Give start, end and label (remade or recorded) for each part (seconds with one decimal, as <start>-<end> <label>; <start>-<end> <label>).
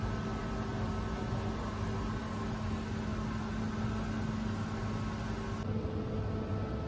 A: 0.0-6.9 recorded